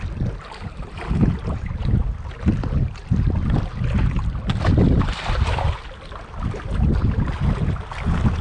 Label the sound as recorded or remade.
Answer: recorded